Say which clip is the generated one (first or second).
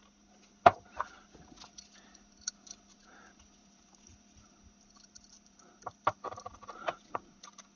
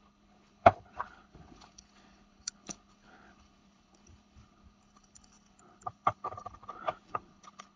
second